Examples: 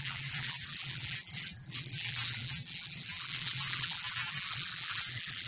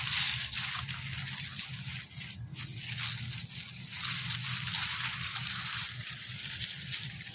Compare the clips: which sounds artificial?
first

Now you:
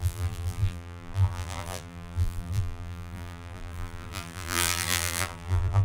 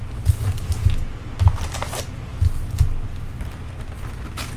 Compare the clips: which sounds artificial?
first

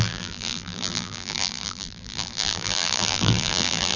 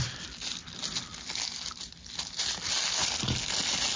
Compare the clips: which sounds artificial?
first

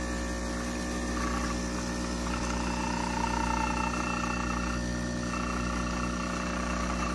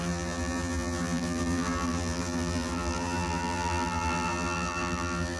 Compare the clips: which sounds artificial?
second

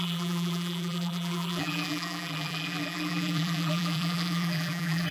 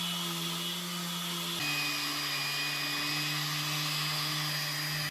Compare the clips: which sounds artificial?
first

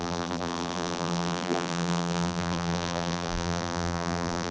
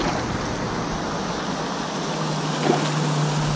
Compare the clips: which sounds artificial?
first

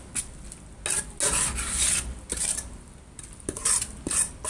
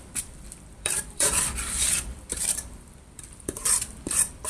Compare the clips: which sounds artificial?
second